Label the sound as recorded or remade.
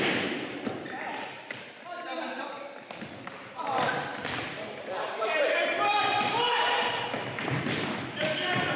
remade